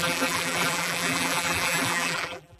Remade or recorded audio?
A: remade